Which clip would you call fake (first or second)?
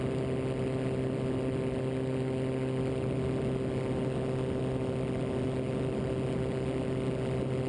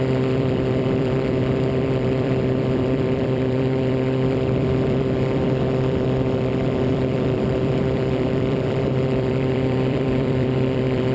second